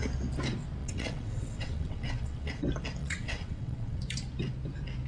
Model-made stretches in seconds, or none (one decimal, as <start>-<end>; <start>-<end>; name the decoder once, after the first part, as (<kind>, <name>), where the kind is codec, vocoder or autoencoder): 0.8-2.6 (vocoder, WaveNeXt); 3.0-4.0